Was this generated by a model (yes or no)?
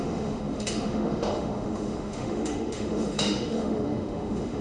yes